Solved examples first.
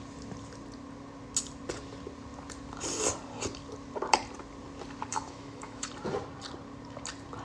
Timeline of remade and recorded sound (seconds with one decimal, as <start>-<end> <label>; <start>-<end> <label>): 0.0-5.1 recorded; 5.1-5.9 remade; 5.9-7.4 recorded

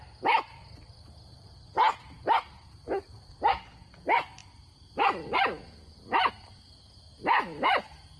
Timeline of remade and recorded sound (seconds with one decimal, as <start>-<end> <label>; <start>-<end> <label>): 0.0-8.2 recorded

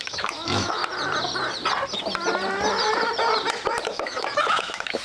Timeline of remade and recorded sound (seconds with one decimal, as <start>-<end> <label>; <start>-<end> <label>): 0.0-0.8 remade; 0.8-3.8 recorded; 3.8-5.0 remade